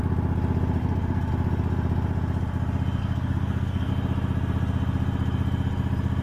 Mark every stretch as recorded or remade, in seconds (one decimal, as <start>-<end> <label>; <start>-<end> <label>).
0.0-0.8 recorded; 0.8-1.3 remade; 1.3-3.0 recorded; 3.0-3.9 remade; 3.9-6.2 recorded